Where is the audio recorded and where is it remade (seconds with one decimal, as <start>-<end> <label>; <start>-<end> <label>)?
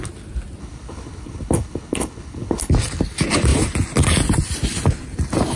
0.0-0.6 recorded; 0.6-2.7 remade; 2.7-5.6 recorded